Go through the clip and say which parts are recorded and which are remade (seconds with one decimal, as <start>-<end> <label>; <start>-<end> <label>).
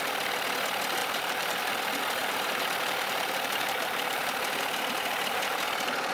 0.0-1.0 recorded; 1.0-1.6 remade; 1.6-2.2 recorded; 2.2-6.1 remade